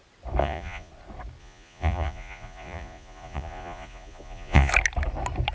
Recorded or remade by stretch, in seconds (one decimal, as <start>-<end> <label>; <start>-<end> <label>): 0.0-0.4 recorded; 0.4-0.9 remade; 0.9-1.4 recorded; 1.4-4.7 remade; 4.7-5.5 recorded